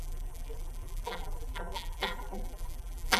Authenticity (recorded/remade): remade